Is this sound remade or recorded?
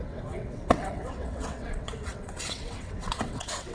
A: remade